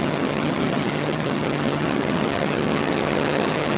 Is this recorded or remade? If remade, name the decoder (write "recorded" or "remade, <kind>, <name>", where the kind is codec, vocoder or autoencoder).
remade, vocoder, HiFi-GAN